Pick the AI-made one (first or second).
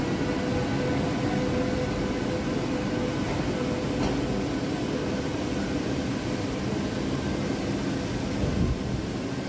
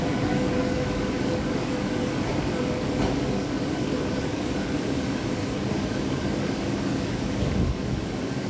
second